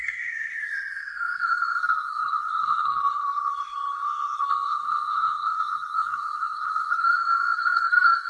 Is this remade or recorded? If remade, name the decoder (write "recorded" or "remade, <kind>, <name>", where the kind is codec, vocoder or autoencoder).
remade, codec, SNAC